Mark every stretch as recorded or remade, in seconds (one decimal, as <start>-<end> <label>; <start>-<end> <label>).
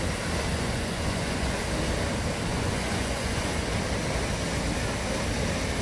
0.0-0.5 recorded; 0.5-1.6 remade; 1.6-2.5 recorded; 2.5-3.5 remade; 3.5-5.8 recorded